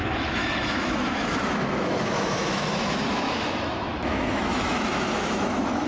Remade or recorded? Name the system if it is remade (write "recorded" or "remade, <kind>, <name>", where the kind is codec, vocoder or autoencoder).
remade, autoencoder, DAC-VAE